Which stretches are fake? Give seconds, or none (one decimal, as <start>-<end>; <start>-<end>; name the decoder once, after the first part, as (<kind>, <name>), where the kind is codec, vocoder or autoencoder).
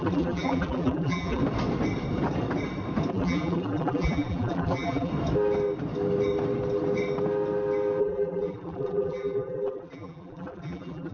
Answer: 0.0-1.4 (vocoder, BigVGAN v2); 3.1-5.1; 8.0-11.1